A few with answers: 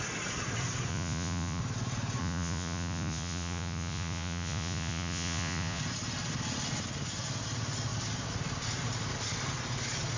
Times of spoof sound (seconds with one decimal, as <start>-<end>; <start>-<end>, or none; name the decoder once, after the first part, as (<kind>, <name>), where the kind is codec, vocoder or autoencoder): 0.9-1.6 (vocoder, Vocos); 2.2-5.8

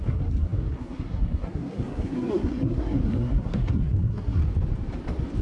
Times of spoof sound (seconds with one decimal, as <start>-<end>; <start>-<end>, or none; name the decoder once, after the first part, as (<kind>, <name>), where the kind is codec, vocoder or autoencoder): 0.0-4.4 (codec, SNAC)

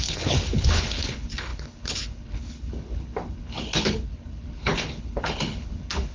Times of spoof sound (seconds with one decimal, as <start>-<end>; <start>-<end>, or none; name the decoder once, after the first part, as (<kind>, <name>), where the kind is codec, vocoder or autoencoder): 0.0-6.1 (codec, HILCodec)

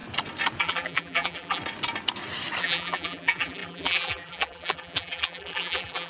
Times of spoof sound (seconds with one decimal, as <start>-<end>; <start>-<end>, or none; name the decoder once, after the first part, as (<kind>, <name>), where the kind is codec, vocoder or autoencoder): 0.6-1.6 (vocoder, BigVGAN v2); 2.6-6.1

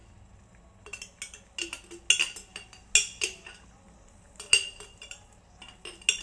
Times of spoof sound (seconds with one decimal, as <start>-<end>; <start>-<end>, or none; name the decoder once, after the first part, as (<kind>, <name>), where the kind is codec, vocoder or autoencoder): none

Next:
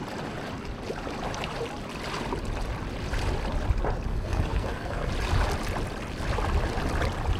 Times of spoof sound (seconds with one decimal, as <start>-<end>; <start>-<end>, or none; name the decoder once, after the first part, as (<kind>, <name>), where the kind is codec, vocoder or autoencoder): 4.1-5.1 (codec, SNAC)